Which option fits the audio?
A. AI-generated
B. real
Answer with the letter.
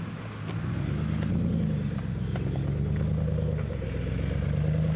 B